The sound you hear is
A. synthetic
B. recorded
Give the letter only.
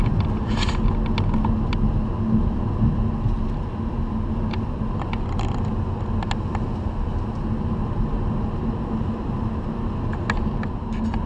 B